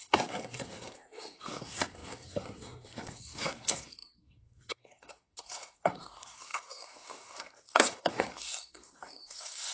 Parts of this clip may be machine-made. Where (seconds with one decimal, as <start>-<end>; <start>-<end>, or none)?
0.0-9.7